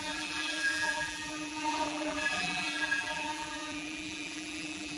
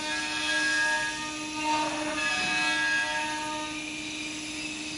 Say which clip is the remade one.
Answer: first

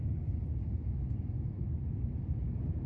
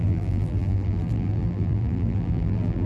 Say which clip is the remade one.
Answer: second